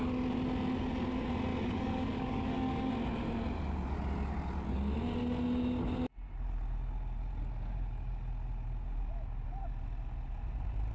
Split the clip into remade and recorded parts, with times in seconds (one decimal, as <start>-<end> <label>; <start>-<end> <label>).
0.0-1.5 recorded; 1.5-2.9 remade; 2.9-10.9 recorded